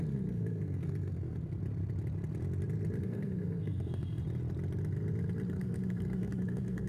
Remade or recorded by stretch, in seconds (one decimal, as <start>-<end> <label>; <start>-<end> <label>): 0.0-1.6 remade; 1.6-3.0 recorded; 3.0-4.2 remade; 4.2-5.5 recorded; 5.5-6.9 remade